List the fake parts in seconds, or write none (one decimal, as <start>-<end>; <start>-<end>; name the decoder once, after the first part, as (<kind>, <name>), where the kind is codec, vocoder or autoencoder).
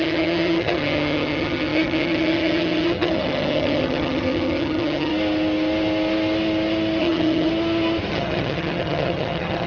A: 0.0-5.1 (vocoder, HiFi-GAN); 7.0-7.5; 8.1-9.7